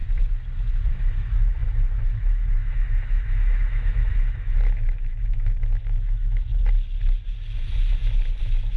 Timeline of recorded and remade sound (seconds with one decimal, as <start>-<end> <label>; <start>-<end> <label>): 0.0-0.9 recorded; 0.9-6.5 remade; 6.5-8.4 recorded; 8.4-8.8 remade